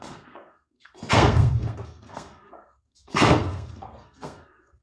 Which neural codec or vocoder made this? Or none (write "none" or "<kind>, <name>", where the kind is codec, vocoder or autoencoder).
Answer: codec, SNAC